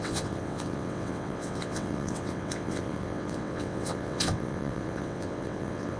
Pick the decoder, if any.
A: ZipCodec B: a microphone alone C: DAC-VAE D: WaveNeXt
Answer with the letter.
D